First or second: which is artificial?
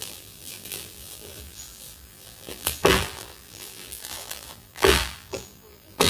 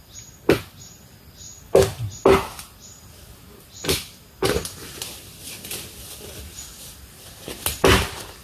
first